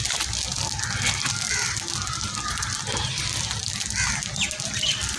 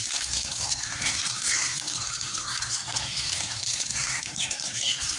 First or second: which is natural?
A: first